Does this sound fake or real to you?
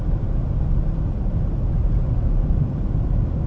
real